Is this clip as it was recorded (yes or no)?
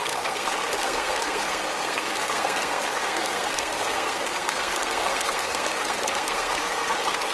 no